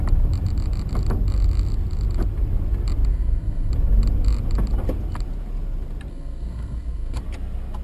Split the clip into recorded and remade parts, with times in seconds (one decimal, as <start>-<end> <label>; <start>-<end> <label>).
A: 0.0-3.1 recorded; 3.1-3.7 remade; 3.7-6.1 recorded; 6.1-7.2 remade; 7.2-7.8 recorded